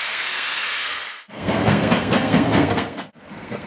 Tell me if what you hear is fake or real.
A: fake